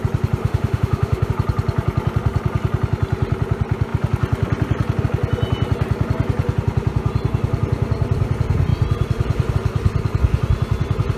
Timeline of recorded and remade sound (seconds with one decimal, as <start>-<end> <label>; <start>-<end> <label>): 0.0-0.4 recorded; 0.4-1.3 remade; 1.3-11.2 recorded